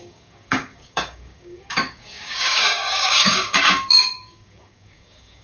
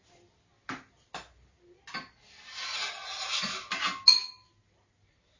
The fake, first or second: first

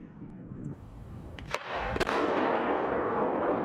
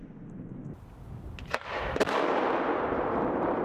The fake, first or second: first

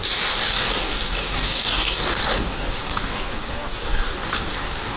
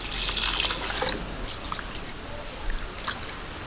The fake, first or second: first